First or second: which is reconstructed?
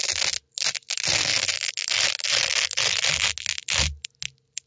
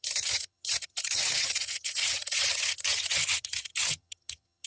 second